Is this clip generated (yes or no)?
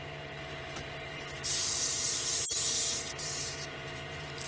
yes